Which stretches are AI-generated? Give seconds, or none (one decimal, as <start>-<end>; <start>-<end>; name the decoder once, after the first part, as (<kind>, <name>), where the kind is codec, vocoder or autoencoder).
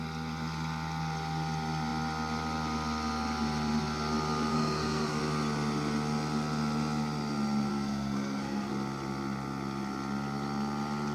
4.5-5.2 (codec, SNAC); 7.7-8.7